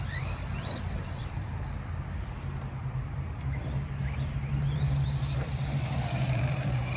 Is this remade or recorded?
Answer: remade